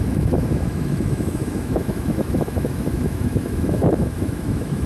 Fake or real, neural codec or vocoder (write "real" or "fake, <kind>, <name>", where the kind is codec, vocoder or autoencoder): fake, autoencoder, DAC-VAE